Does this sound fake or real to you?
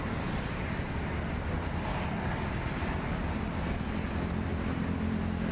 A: real